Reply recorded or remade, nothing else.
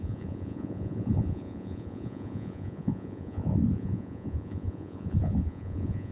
remade